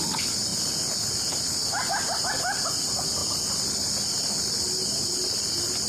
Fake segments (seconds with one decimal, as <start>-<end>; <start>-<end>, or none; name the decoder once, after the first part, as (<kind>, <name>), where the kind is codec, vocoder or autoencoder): 0.5-1.3 (vocoder, Vocos)